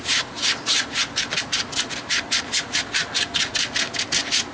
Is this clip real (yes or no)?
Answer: yes